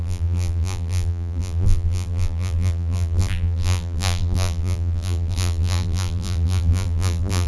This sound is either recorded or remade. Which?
remade